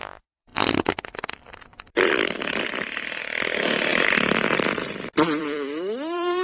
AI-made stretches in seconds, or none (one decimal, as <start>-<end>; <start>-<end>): 0.0-6.4